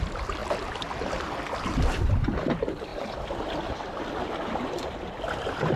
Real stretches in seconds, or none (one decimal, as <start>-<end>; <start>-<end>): 2.9-5.2